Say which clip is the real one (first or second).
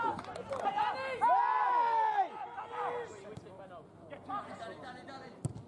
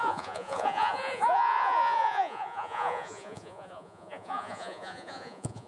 first